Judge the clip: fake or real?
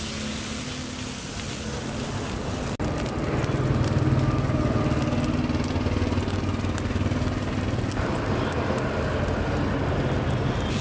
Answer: real